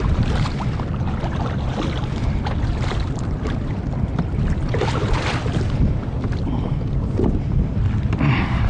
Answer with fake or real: fake